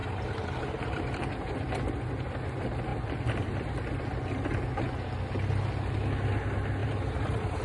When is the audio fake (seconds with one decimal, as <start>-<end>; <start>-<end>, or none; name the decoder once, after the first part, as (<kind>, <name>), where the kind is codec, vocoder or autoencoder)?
0.0-2.1 (vocoder, BigVGAN v2); 6.8-7.6